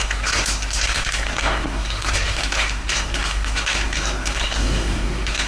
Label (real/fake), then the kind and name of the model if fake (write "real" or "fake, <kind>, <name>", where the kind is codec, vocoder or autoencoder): fake, codec, SNAC